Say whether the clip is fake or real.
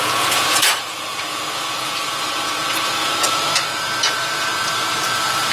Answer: fake